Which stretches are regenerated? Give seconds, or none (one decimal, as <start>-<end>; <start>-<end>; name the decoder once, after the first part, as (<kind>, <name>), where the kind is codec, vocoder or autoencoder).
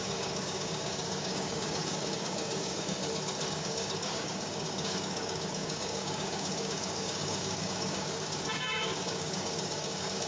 0.0-3.0 (codec, DAC); 3.5-10.3